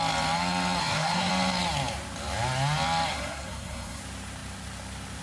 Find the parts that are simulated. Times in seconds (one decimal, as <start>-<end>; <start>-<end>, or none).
0.8-1.3; 3.1-4.0